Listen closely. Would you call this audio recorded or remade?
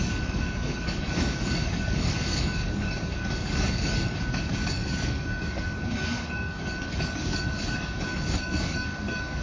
remade